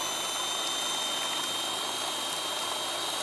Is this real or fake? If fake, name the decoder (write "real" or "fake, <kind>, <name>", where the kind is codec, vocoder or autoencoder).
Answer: real